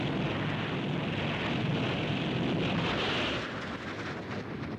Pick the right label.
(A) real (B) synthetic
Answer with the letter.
A